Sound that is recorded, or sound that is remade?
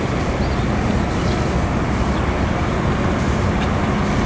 recorded